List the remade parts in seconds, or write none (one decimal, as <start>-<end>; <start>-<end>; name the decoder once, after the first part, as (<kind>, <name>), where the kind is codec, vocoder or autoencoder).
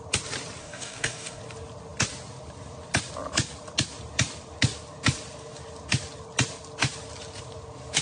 0.6-1.4 (codec, DAC)